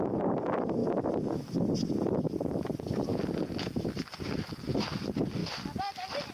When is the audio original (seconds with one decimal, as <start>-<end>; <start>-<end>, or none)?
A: 0.0-6.3

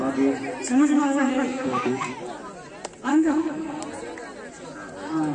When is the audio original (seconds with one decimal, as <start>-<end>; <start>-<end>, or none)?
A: 0.0-0.7; 2.1-3.1; 3.8-5.3

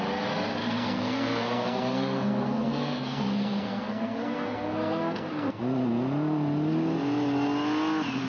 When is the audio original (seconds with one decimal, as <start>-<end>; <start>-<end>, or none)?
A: 0.0-0.6; 5.6-8.3

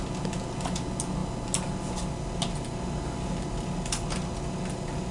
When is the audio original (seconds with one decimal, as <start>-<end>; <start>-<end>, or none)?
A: 0.0-5.1

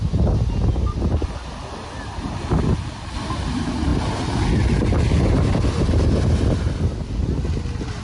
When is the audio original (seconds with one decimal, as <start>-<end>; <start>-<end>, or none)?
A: 0.0-8.0

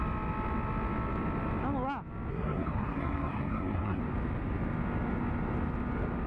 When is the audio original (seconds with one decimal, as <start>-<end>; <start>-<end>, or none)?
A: 0.0-2.3; 4.0-6.3